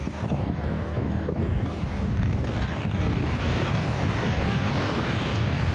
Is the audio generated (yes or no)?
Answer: yes